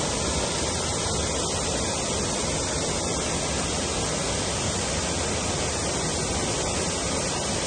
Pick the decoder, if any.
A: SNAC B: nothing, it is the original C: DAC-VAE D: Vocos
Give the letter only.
B